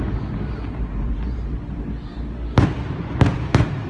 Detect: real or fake real